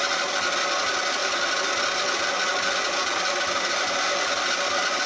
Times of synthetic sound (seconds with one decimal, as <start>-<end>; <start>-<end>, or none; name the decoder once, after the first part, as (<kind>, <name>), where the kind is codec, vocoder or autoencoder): none